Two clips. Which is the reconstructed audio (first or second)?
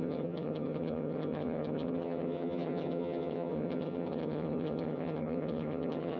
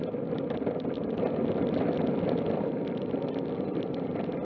first